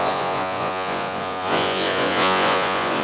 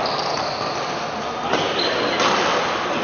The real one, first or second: second